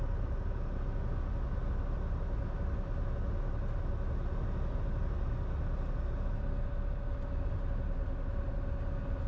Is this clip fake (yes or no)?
no